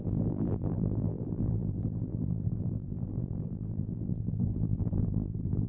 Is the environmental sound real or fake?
fake